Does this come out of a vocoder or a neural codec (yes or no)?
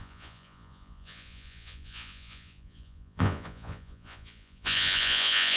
yes